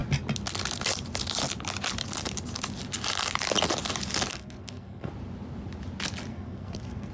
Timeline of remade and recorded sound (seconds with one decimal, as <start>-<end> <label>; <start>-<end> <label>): 0.0-4.3 recorded; 4.3-5.1 remade; 5.1-6.3 recorded; 6.3-7.1 remade